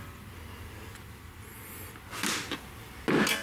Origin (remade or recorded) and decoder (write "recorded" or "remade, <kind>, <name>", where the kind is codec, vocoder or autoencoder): recorded